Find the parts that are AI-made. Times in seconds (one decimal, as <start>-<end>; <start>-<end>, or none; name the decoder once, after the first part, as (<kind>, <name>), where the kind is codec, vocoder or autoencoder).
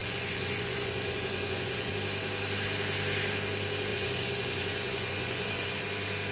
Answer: 0.0-1.9 (vocoder, Vocos); 3.9-5.8